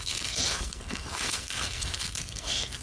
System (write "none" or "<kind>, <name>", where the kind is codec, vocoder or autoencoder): codec, SNAC